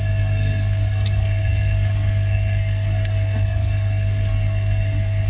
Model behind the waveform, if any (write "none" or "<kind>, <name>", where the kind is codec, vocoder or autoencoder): codec, SNAC